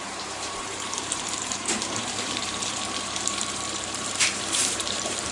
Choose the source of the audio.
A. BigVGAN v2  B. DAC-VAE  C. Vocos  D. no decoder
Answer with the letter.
A